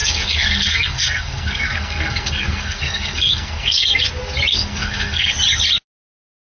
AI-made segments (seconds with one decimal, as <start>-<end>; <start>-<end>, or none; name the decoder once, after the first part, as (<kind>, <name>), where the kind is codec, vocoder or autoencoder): 0.0-4.0 (codec, SNAC); 4.5-5.3